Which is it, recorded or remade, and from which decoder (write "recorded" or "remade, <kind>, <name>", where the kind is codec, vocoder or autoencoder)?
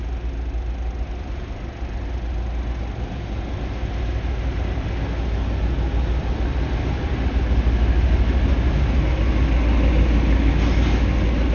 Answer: recorded